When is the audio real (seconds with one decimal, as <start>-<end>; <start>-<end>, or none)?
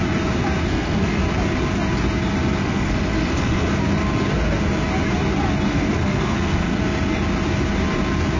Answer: 0.0-0.7; 1.2-2.6; 3.8-5.7; 6.8-8.4